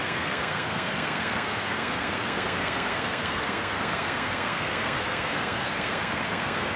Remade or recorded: remade